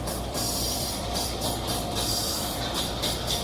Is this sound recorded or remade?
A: remade